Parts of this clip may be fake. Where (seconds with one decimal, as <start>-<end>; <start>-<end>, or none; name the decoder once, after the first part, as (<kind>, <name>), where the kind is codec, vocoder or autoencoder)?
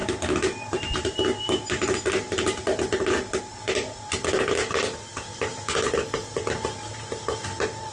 none